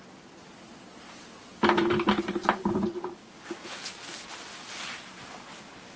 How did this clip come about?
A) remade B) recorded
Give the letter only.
B